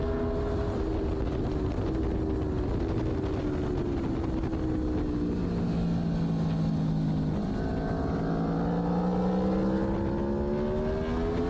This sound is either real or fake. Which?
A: real